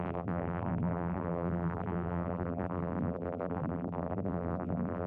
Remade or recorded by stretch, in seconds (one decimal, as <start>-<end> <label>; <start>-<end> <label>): 0.0-5.1 remade

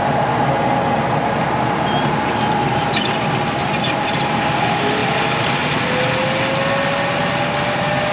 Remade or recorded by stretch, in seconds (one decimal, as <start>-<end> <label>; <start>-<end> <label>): 0.0-8.1 recorded

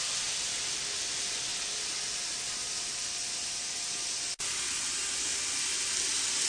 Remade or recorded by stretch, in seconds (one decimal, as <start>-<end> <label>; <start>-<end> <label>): 0.0-6.5 recorded

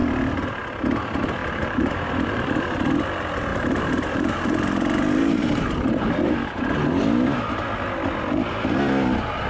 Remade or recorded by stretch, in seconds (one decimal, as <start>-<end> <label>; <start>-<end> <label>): 0.0-1.4 recorded; 1.4-2.1 remade; 2.1-3.5 recorded; 3.5-6.3 remade; 6.3-9.5 recorded

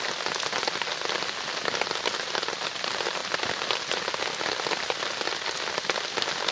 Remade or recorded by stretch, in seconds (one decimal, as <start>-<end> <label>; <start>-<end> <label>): 0.0-6.5 recorded

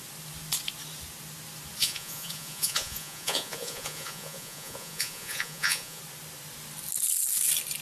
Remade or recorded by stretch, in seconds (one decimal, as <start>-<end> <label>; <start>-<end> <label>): 0.0-1.8 recorded; 1.8-6.0 remade; 6.0-7.8 recorded

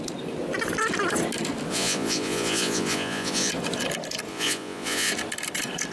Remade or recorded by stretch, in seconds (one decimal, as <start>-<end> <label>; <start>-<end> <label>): 0.0-1.7 recorded; 1.7-3.5 remade; 3.5-4.3 recorded; 4.3-5.1 remade; 5.1-5.9 recorded